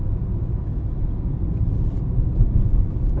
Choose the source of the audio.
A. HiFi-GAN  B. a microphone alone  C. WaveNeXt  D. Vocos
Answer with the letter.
B